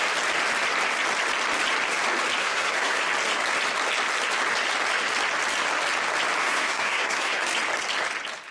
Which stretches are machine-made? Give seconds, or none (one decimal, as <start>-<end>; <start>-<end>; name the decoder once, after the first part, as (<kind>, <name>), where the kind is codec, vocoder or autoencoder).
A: 2.4-3.0 (codec, SNAC); 6.4-7.4